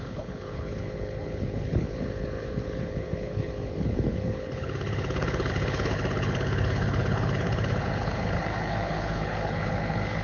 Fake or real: fake